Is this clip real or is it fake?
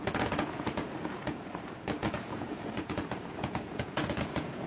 fake